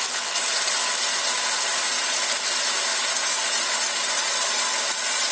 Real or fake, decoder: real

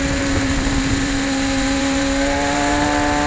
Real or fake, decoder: fake, vocoder, BigVGAN v2